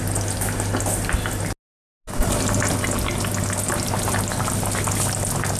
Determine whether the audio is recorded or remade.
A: recorded